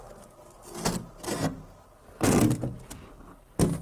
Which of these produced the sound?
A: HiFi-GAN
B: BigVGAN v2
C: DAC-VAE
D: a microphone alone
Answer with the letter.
D